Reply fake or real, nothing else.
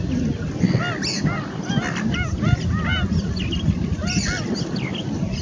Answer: real